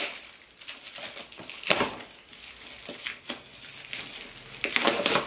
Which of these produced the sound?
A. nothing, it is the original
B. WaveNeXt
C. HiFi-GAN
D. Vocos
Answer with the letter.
A